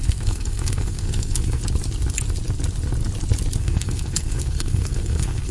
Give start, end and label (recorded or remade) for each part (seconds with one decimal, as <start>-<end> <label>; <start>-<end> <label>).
0.0-1.6 remade; 1.6-3.6 recorded; 3.6-5.5 remade